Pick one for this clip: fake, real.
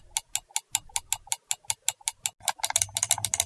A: real